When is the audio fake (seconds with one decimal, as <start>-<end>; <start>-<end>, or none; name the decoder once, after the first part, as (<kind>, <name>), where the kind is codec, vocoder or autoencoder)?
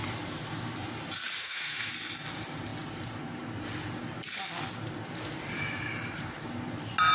1.4-1.9 (autoencoder, DAC-VAE)